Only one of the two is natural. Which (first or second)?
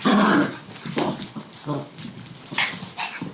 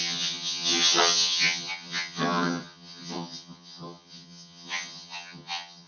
first